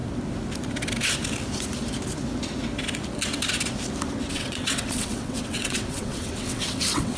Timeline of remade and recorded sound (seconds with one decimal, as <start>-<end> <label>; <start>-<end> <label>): 0.0-4.3 recorded; 4.3-7.2 remade